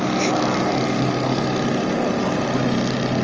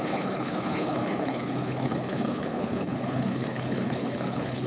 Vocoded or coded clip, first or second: second